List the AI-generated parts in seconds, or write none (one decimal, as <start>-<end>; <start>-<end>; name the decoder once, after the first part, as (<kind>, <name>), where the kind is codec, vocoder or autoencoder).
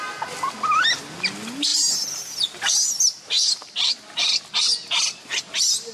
none